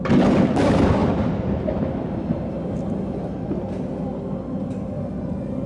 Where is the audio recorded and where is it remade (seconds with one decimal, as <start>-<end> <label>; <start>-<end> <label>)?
0.0-5.7 recorded